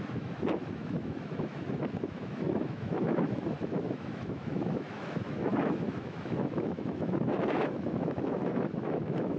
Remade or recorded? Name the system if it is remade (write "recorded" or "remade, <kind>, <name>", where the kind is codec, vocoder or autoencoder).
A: remade, autoencoder, DAC-VAE